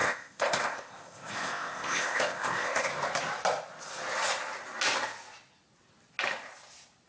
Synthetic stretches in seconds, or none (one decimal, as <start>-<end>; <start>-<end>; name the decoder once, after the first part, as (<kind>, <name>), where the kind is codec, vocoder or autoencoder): 0.0-2.9 (codec, ZipCodec)